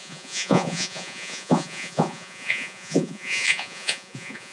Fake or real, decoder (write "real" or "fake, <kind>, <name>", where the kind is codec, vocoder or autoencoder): fake, vocoder, Vocos